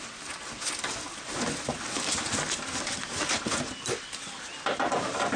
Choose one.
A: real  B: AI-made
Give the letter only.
A